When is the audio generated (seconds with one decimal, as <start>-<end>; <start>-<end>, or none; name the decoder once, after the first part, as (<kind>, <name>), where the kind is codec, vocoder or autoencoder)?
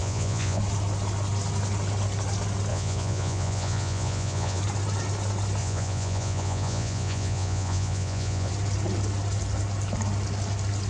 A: 0.0-0.6 (vocoder, Vocos); 2.7-4.6; 5.6-8.5